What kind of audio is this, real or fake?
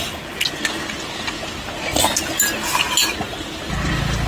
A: real